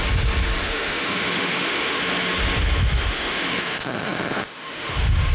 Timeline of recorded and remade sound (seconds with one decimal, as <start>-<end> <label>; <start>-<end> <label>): 0.0-0.6 recorded; 0.6-2.0 remade; 2.0-2.8 recorded; 2.8-5.3 remade